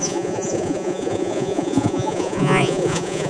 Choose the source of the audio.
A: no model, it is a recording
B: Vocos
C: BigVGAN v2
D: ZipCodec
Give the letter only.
B